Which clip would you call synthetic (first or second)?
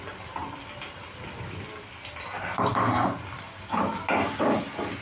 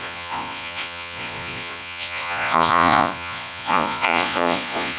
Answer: second